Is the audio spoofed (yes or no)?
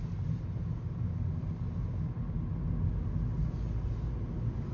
no